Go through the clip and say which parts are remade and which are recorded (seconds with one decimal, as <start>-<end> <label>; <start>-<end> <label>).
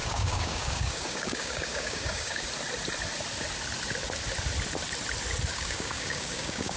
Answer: 0.0-2.5 remade; 2.5-5.5 recorded; 5.5-6.8 remade